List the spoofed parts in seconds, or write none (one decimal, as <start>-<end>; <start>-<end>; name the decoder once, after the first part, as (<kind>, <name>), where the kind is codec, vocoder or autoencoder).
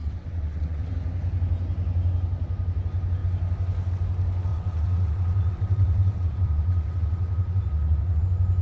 0.0-0.9 (vocoder, WaveNeXt); 4.5-8.2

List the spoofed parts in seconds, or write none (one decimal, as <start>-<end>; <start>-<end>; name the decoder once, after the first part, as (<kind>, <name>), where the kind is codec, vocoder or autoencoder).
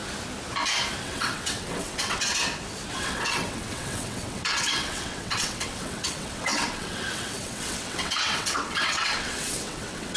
1.0-2.4 (vocoder, WaveNeXt); 2.9-10.2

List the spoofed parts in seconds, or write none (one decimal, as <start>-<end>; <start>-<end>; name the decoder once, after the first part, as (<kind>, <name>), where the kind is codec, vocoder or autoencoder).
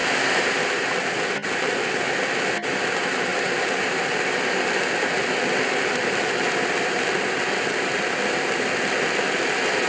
none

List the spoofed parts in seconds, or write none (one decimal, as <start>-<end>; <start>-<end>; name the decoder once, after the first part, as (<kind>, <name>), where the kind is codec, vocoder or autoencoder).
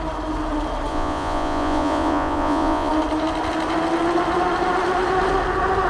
0.9-2.9 (vocoder, Vocos)